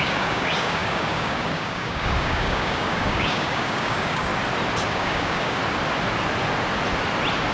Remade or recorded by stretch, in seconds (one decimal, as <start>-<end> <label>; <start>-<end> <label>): 0.0-4.3 remade; 4.3-4.9 recorded; 4.9-5.6 remade; 5.6-7.5 recorded